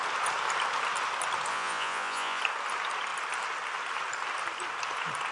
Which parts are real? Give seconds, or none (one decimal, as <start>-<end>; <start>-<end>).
0.0-1.5; 2.4-5.3